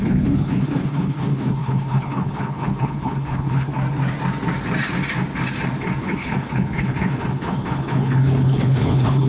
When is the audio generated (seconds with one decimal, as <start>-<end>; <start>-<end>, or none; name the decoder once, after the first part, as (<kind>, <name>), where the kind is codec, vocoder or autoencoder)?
0.0-3.7 (codec, HILCodec); 6.0-9.3